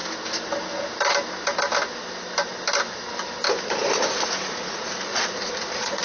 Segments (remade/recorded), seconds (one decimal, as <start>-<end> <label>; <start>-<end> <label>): 0.0-3.6 recorded; 3.6-6.0 remade